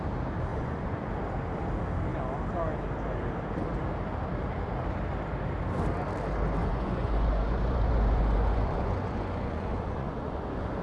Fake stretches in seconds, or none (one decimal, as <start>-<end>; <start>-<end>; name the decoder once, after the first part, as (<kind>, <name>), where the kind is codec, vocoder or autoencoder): 0.5-1.1 (vocoder, Vocos); 6.6-10.8